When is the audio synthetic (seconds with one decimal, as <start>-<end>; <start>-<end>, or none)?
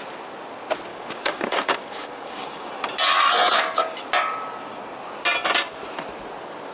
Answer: 0.9-2.7